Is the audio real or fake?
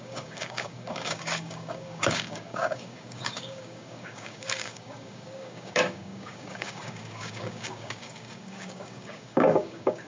fake